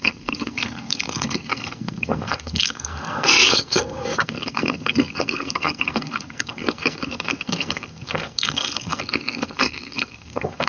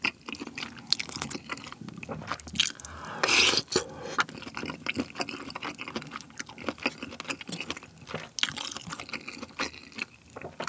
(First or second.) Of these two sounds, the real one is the second